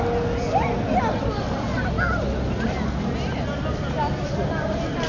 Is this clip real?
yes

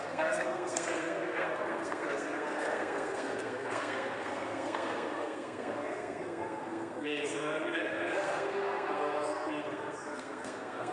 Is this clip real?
no